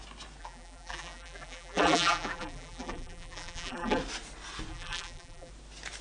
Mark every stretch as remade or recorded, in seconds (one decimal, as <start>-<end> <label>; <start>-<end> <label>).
0.0-0.4 recorded; 0.4-4.0 remade; 4.0-4.7 recorded; 4.7-5.5 remade; 5.5-6.0 recorded